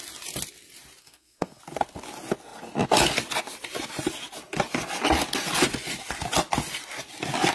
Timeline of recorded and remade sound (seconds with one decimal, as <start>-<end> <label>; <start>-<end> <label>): 0.0-1.0 recorded; 1.0-1.6 remade; 1.6-7.5 recorded